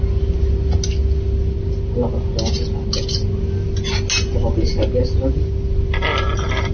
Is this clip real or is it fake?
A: real